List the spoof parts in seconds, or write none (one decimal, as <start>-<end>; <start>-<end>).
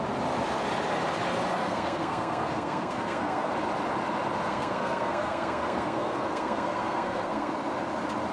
1.6-3.5; 4.5-7.5